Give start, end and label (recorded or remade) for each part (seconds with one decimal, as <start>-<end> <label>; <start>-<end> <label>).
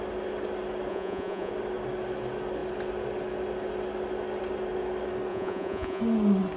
0.0-0.9 recorded; 0.9-1.5 remade; 1.5-5.3 recorded; 5.3-6.0 remade; 6.0-6.6 recorded